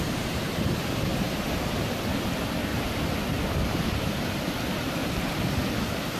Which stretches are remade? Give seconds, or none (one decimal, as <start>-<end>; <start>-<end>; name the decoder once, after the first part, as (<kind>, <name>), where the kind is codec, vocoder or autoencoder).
1.1-2.0 (vocoder, BigVGAN v2); 2.7-4.5; 5.0-5.6